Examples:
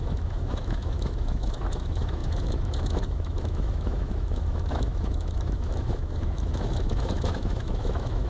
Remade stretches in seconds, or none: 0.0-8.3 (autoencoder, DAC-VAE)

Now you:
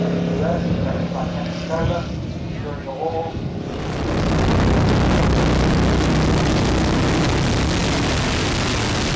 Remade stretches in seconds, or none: none

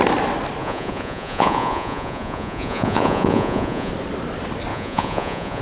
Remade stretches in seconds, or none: 0.6-3.9 (vocoder, Vocos); 4.7-5.6

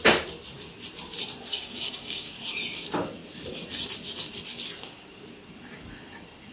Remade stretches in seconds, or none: 1.5-2.4 (codec, DAC)

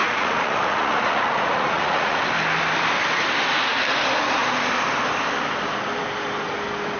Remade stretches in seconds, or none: 0.0-2.2 (vocoder, Vocos)

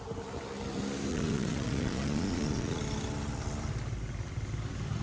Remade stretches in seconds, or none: 1.1-2.8 (vocoder, Vocos)

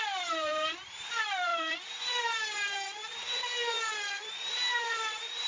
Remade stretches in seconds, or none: 0.0-3.1 (vocoder, BigVGAN v2); 4.5-5.5